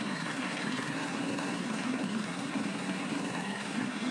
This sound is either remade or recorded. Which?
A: remade